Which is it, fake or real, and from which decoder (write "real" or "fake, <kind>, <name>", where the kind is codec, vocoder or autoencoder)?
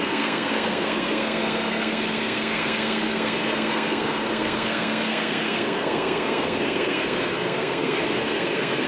fake, codec, SNAC